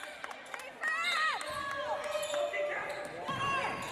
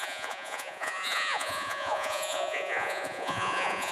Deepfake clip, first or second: second